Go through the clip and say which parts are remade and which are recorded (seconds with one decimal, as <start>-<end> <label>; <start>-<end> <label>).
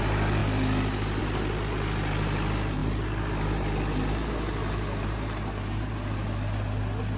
0.0-7.2 recorded